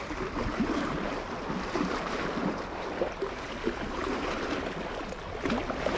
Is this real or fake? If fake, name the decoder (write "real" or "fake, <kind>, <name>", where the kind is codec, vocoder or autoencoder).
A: real